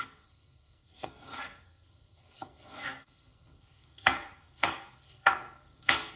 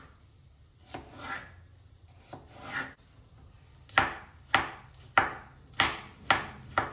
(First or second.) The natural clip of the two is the second